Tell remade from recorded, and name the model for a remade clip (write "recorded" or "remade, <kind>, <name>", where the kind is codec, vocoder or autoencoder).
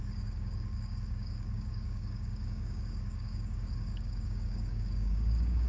remade, codec, DAC